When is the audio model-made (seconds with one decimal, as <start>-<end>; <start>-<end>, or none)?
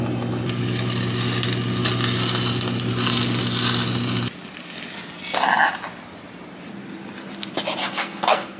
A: 7.8-8.6